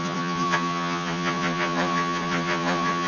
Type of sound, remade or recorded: remade